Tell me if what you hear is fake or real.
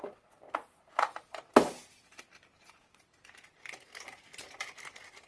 real